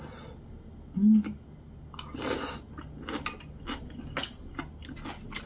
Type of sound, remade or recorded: recorded